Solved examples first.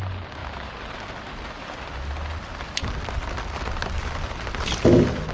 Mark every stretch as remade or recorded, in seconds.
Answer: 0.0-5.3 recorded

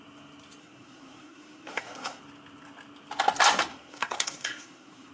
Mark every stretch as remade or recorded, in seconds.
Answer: 0.0-0.6 recorded; 0.6-2.2 remade; 2.2-3.7 recorded; 3.7-5.1 remade

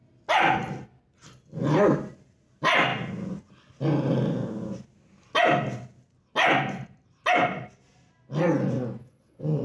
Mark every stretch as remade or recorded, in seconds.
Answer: 0.0-9.0 recorded; 9.0-9.6 remade

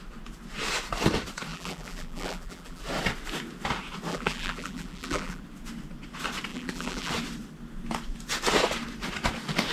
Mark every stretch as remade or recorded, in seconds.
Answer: 0.0-1.5 recorded; 1.5-2.8 remade; 2.8-4.1 recorded; 4.1-5.4 remade; 5.4-6.5 recorded; 6.5-7.1 remade; 7.1-9.7 recorded